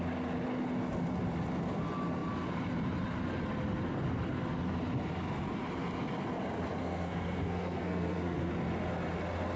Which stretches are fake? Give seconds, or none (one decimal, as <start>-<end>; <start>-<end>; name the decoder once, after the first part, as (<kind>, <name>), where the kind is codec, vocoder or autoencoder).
6.8-8.5 (codec, SNAC)